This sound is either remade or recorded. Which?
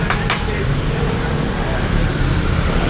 remade